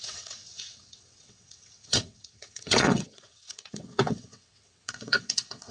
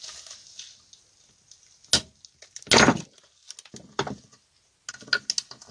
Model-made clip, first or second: first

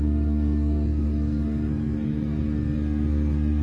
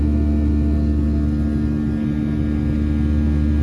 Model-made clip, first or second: first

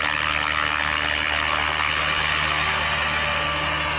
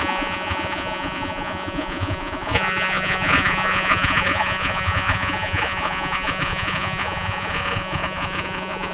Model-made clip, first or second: second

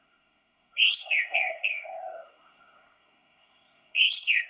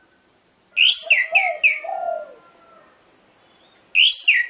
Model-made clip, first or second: first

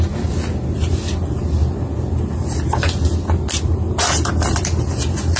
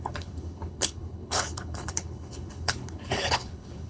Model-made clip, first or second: second